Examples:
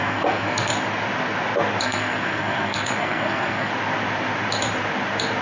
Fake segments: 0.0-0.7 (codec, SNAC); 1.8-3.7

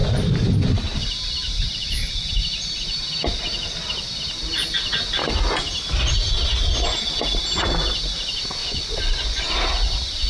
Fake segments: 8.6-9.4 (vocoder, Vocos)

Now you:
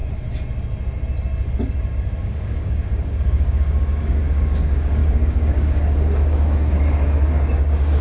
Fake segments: 2.2-8.0 (codec, DAC)

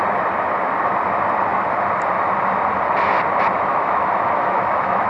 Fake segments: 3.7-5.1 (autoencoder, DAC-VAE)

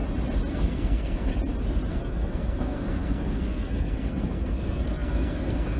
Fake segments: 0.5-1.3 (codec, SNAC); 1.9-5.8

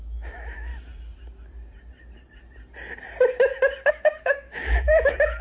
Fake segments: 0.0-0.7 (autoencoder, DAC-VAE); 3.9-5.4

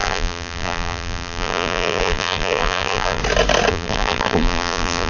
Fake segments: 0.0-3.2 (vocoder, BigVGAN v2); 3.7-5.1